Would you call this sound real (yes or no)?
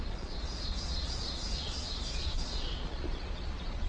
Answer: no